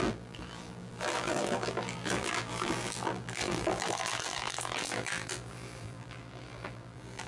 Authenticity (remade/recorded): remade